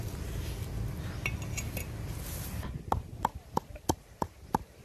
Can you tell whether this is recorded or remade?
recorded